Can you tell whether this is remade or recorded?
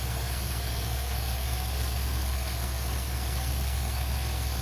remade